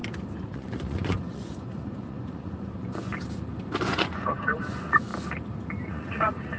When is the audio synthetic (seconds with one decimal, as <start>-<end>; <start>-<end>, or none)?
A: 0.5-3.1; 3.8-5.1; 5.8-6.6